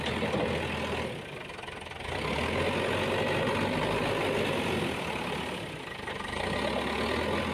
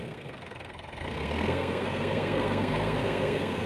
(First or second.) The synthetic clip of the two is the second